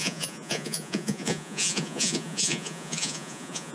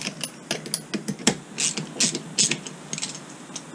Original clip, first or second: second